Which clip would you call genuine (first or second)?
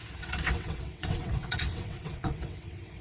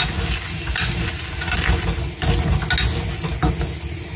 second